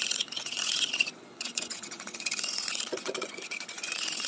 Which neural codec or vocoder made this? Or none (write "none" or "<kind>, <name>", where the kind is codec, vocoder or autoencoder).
vocoder, Vocos